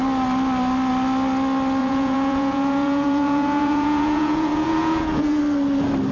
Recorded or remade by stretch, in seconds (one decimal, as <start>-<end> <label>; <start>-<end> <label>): 0.0-1.8 recorded; 1.8-5.4 remade; 5.4-6.1 recorded